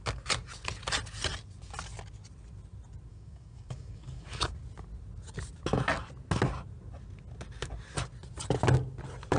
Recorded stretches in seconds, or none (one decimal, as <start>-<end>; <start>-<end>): 0.0-3.1; 4.5-9.4